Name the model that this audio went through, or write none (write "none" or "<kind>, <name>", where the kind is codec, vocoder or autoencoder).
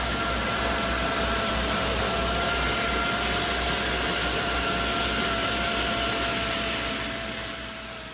none